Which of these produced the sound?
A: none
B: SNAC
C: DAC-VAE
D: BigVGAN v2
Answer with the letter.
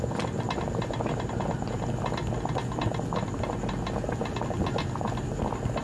A